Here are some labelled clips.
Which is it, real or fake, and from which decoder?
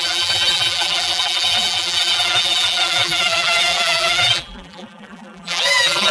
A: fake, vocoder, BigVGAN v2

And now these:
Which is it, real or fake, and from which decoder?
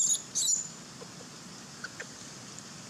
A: real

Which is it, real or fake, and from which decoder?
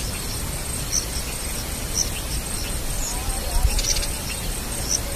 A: real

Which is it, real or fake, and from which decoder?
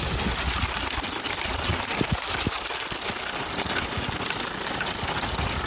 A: real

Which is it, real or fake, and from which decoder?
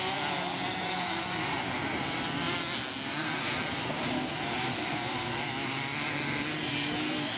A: real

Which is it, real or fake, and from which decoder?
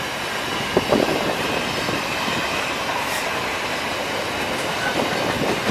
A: real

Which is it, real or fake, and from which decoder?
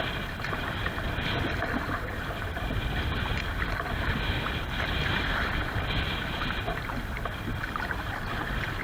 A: fake, vocoder, BigVGAN v2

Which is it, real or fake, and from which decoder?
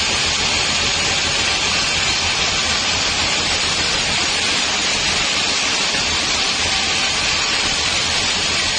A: fake, vocoder, BigVGAN v2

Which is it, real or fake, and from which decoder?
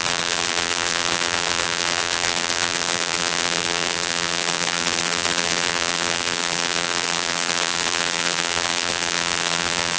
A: fake, vocoder, BigVGAN v2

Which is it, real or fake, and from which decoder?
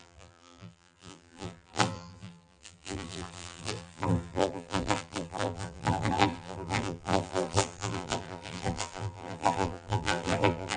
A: fake, vocoder, BigVGAN v2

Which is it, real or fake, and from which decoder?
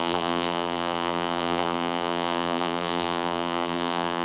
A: fake, vocoder, BigVGAN v2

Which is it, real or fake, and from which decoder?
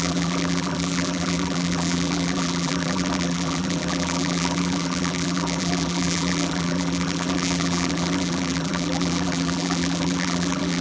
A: fake, vocoder, BigVGAN v2